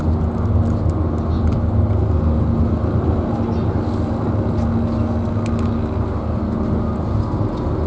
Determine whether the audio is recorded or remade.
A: recorded